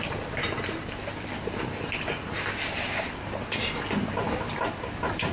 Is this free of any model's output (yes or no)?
yes